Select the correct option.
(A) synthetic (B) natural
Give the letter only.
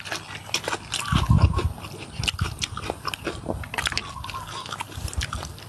B